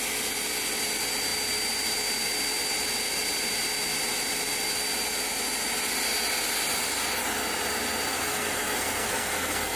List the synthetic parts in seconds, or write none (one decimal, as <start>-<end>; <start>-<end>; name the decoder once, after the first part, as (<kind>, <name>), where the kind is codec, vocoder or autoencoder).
8.1-9.8 (codec, SNAC)